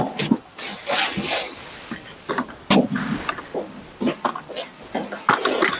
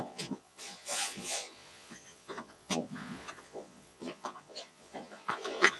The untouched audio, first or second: first